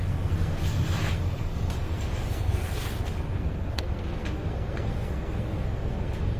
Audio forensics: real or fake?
fake